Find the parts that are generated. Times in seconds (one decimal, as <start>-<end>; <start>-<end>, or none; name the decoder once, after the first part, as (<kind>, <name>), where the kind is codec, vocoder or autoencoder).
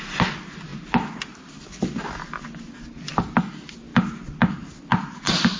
none